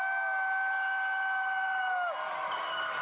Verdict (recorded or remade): recorded